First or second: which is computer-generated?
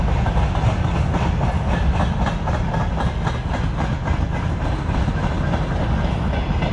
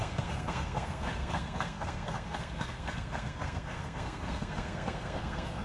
second